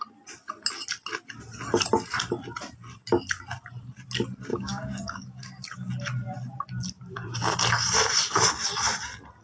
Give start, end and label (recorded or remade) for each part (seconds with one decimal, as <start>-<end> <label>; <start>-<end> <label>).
0.0-4.5 recorded; 4.5-5.9 remade; 5.9-9.4 recorded